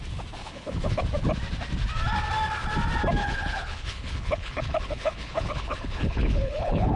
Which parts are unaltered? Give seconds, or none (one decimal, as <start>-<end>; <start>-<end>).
0.0-0.4; 1.0-3.2